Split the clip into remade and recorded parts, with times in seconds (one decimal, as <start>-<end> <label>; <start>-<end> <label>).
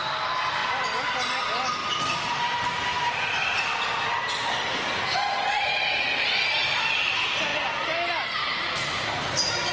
0.0-0.6 recorded; 0.6-1.4 remade; 1.4-1.8 recorded; 1.8-3.6 remade; 3.6-9.7 recorded